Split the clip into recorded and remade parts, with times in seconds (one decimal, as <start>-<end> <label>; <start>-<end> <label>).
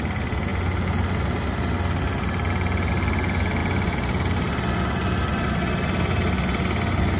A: 0.0-7.2 recorded